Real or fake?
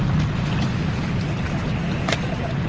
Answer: real